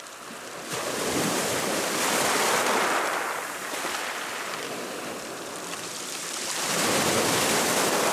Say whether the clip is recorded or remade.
remade